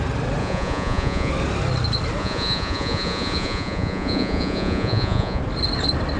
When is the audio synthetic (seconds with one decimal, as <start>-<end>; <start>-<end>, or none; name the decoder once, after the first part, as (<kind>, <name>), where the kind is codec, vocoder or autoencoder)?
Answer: 0.4-1.3 (vocoder, Vocos); 2.2-5.4